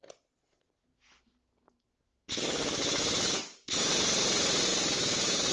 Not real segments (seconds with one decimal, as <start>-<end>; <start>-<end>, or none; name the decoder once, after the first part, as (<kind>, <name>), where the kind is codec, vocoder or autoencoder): 0.9-3.9 (autoencoder, DAC-VAE); 4.7-5.5